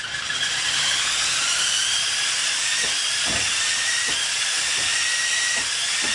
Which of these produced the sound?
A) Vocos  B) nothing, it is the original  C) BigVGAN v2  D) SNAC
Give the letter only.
B